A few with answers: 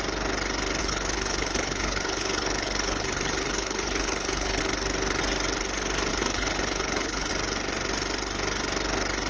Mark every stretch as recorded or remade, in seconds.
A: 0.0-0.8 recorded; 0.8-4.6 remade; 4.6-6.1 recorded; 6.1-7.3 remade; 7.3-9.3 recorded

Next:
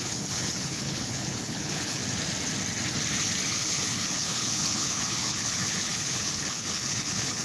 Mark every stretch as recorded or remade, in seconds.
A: 0.0-2.0 remade; 2.0-3.5 recorded; 3.5-7.4 remade

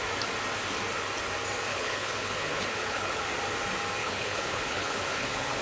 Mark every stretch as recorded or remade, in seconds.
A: 0.0-1.7 recorded; 1.7-3.2 remade; 3.2-4.0 recorded; 4.0-5.6 remade

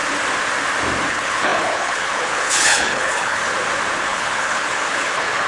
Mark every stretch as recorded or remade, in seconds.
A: 0.0-1.1 recorded; 1.1-3.4 remade; 3.4-4.0 recorded; 4.0-5.5 remade

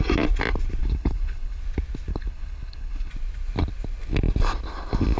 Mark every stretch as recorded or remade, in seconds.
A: 0.0-0.8 recorded; 0.8-1.6 remade; 1.6-2.1 recorded; 2.1-3.1 remade; 3.1-5.2 recorded

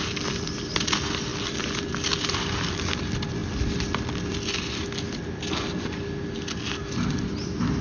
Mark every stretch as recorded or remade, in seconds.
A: 0.0-7.8 recorded